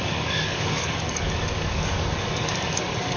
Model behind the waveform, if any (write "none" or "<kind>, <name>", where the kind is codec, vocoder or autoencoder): codec, DAC